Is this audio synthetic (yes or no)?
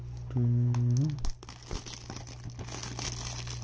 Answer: no